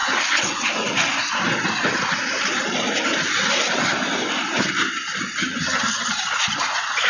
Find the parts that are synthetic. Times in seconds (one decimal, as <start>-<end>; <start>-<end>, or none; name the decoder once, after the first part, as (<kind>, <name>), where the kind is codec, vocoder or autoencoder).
5.4-6.2 (vocoder, HiFi-GAN)